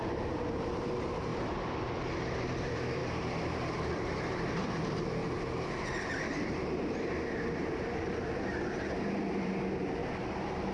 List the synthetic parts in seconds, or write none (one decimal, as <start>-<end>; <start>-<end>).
0.0-1.3; 1.8-5.2; 6.2-10.7